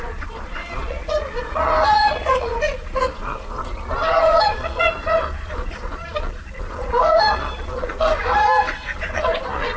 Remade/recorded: remade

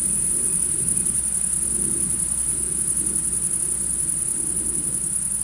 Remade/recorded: recorded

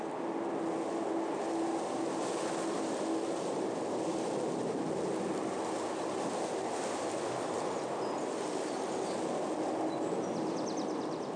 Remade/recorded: recorded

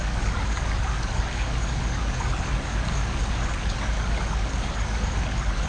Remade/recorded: remade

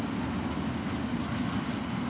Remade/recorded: recorded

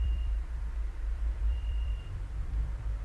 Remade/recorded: remade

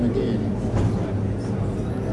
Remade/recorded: recorded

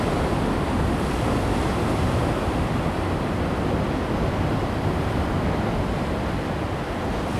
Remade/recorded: recorded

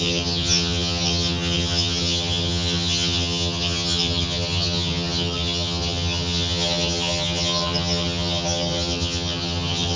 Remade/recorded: remade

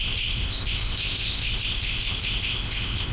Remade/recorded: remade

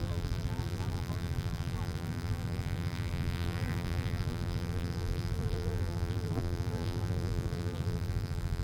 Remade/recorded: remade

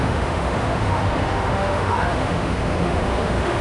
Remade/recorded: remade